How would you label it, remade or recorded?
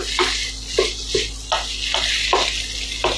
recorded